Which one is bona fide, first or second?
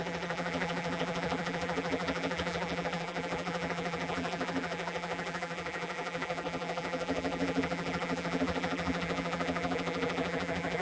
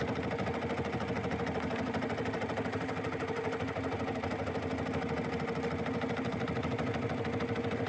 second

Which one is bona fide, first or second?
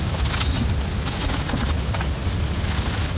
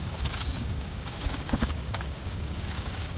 first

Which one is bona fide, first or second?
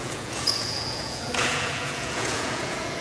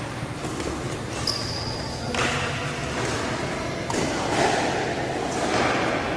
second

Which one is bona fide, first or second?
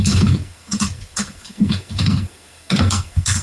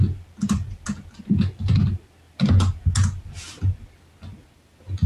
second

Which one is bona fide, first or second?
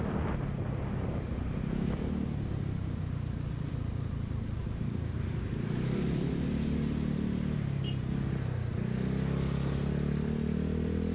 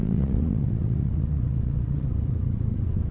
first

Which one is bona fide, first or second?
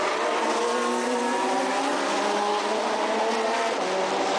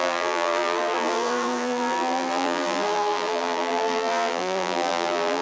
first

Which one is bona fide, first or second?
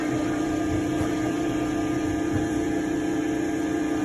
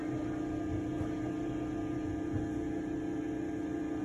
second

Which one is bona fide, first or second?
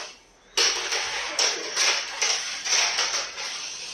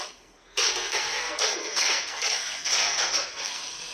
first